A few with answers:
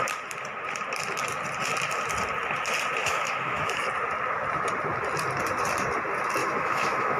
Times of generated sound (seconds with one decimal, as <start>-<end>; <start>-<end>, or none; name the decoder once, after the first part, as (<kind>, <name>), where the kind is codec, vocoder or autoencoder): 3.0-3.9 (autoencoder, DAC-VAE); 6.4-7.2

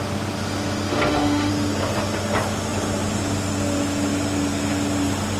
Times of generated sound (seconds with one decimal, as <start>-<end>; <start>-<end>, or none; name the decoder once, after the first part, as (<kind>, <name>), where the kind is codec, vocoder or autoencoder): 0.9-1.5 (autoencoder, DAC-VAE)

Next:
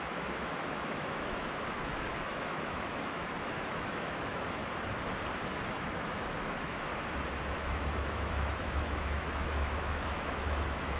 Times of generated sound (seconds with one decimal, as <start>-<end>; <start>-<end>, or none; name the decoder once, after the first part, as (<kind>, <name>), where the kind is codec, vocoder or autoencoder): 0.0-4.6 (autoencoder, DAC-VAE); 5.7-6.9; 7.4-11.0

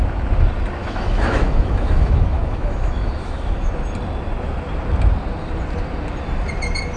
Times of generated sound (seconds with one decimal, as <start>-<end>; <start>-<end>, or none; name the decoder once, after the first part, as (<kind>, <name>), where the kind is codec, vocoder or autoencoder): 0.8-3.7 (autoencoder, DAC-VAE)

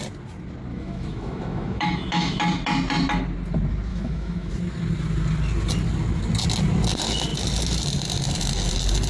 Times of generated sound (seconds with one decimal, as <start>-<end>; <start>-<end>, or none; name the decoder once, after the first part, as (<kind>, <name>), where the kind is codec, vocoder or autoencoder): 0.7-2.4 (autoencoder, DAC-VAE); 3.9-4.5

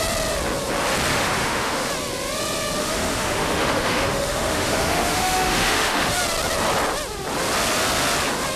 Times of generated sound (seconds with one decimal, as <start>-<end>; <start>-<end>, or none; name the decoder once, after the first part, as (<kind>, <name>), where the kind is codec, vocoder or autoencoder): 1.1-1.9 (autoencoder, DAC-VAE); 2.8-6.2